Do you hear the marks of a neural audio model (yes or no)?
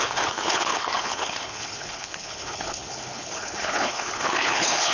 yes